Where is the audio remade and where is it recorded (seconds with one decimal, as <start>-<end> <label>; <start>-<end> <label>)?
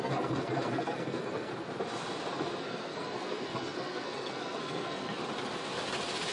0.0-1.5 remade; 1.5-2.6 recorded; 2.6-5.2 remade; 5.2-6.3 recorded